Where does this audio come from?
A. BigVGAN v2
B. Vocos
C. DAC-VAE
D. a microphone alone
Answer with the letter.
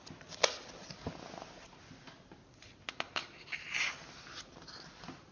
D